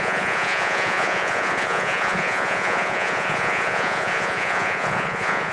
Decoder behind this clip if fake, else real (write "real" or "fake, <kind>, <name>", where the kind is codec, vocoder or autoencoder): fake, vocoder, Vocos